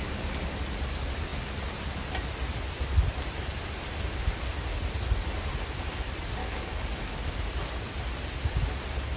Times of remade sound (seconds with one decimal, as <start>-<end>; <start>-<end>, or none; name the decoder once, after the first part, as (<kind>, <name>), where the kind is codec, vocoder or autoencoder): 6.4-7.0 (codec, DAC)